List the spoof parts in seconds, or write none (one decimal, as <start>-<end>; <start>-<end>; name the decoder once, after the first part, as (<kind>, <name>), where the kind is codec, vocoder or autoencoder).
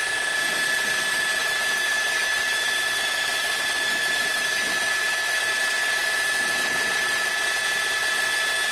1.4-5.4 (autoencoder, DAC-VAE); 6.0-7.3